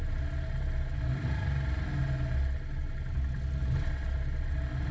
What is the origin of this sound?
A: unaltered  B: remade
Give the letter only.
A